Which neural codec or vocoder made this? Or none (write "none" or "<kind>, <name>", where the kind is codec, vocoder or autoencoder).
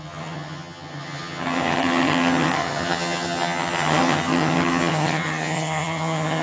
vocoder, HiFi-GAN